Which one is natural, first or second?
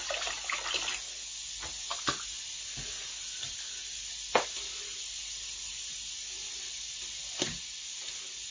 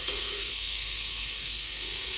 first